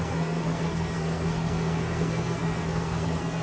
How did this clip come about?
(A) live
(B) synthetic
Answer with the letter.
B